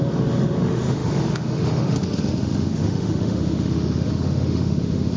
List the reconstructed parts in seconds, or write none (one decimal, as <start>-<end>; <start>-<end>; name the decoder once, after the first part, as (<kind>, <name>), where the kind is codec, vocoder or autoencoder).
0.0-5.2 (autoencoder, DAC-VAE)